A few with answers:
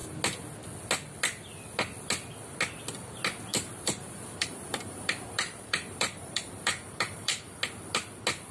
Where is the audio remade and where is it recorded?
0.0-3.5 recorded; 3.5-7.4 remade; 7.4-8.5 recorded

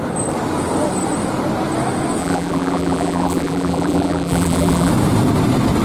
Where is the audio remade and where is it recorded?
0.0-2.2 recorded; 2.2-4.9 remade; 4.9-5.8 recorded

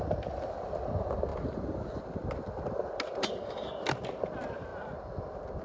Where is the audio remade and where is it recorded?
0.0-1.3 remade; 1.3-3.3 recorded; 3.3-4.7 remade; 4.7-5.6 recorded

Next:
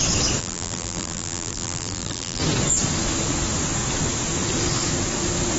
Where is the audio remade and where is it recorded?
0.0-0.4 recorded; 0.4-2.4 remade; 2.4-5.6 recorded